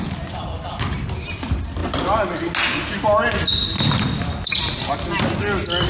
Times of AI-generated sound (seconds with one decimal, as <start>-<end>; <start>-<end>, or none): none